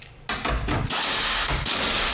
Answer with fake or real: real